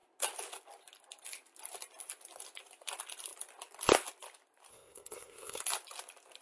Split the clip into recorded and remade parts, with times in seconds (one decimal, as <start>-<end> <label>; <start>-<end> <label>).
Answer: 0.0-4.7 recorded; 4.7-5.6 remade; 5.6-6.4 recorded